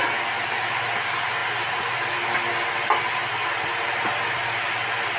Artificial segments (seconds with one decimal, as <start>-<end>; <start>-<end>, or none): none